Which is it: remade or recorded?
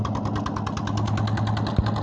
recorded